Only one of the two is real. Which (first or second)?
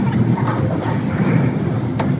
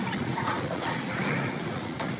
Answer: first